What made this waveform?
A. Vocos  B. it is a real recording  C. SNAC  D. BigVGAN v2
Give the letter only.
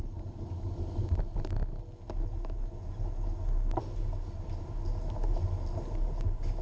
B